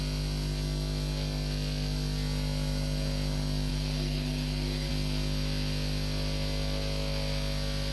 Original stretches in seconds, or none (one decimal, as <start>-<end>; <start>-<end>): 0.0-3.7; 4.9-7.9